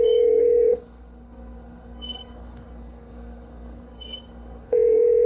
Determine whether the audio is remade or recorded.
remade